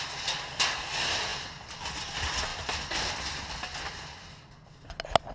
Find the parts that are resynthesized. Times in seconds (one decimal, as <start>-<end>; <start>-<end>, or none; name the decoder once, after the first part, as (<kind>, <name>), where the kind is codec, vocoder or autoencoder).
none